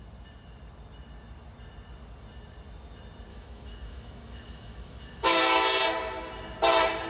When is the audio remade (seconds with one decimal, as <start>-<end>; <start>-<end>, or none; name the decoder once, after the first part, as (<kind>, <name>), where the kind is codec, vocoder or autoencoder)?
3.3-5.4 (autoencoder, DAC-VAE)